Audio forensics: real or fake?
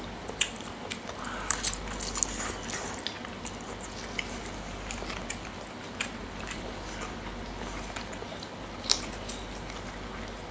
real